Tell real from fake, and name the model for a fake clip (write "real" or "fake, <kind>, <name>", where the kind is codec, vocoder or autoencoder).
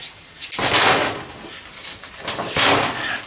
real